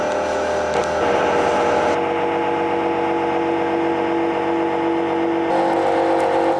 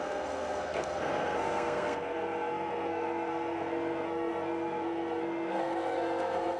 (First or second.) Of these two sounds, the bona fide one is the first